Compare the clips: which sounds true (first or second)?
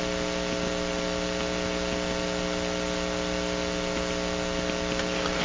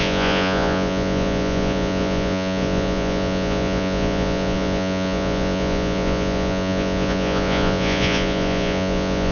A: first